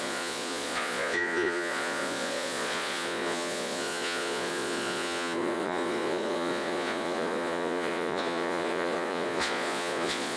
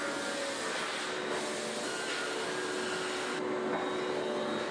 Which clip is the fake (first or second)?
first